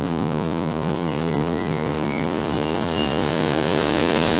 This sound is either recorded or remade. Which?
remade